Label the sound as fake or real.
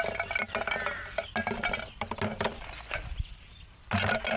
real